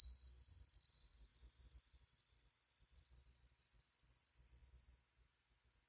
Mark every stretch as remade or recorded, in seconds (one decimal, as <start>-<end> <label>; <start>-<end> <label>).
0.0-1.3 remade; 1.3-1.9 recorded; 1.9-4.6 remade; 4.6-5.9 recorded